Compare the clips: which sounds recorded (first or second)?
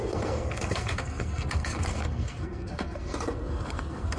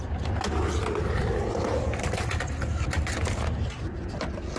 second